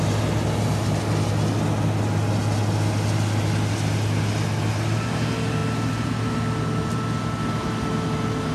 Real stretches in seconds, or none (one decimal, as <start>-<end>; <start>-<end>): 0.0-8.5